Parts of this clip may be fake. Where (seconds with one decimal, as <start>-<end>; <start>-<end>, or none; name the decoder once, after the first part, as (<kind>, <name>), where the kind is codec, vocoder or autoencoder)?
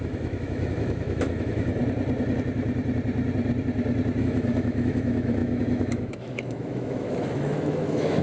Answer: 0.0-1.8 (autoencoder, DAC-VAE); 4.2-8.2